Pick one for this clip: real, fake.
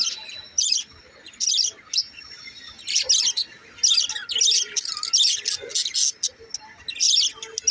real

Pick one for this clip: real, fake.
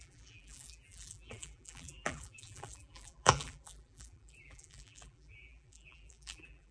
fake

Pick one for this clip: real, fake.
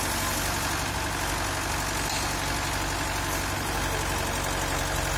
real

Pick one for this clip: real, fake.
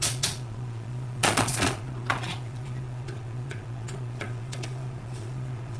fake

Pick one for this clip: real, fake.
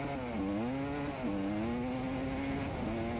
real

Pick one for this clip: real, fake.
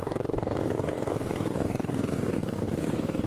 fake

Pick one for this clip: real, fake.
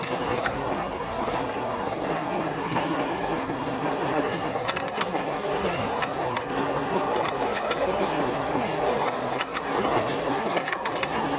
fake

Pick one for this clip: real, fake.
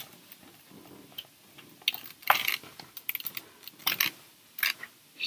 real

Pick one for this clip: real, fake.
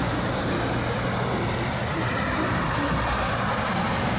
fake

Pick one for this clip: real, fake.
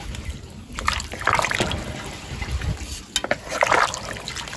real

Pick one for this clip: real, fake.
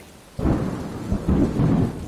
real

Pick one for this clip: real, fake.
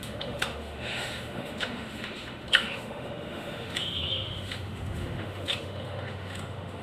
fake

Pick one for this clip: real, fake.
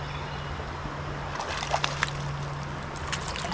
real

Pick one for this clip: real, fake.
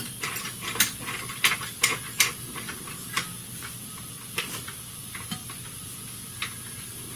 real